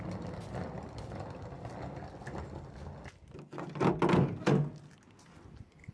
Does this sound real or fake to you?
real